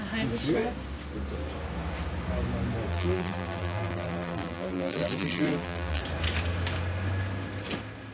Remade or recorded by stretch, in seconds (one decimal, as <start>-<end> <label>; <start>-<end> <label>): 0.0-2.9 recorded; 2.9-6.0 remade; 6.0-8.1 recorded